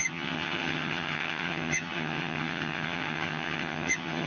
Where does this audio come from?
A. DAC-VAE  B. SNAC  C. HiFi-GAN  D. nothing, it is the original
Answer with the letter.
C